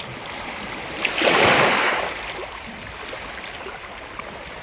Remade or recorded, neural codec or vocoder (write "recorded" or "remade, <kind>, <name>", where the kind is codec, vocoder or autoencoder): recorded